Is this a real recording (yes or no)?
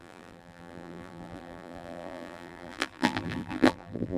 no